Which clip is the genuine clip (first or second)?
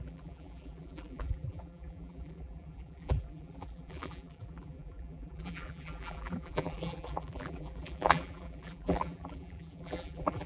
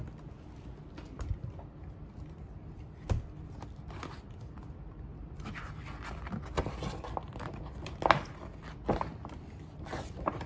second